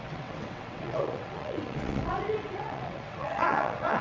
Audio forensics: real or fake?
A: fake